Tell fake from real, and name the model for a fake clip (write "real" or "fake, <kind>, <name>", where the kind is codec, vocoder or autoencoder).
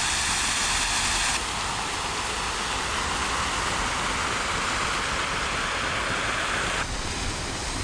real